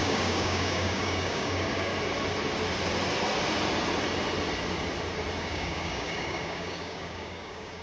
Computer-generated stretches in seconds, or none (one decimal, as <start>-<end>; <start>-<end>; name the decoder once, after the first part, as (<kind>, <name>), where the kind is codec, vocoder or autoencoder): 0.0-1.9 (codec, DAC); 5.4-7.8